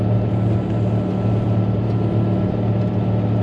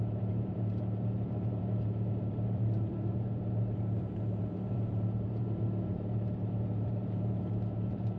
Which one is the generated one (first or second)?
second